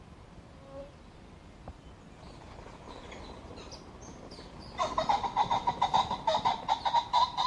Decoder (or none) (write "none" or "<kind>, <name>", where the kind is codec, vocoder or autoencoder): none